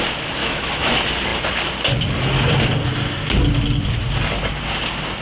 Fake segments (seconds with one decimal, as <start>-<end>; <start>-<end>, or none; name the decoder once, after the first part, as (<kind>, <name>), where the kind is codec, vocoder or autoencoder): 0.4-0.9 (autoencoder, DAC-VAE)